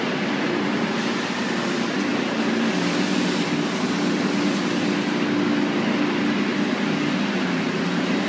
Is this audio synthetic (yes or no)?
no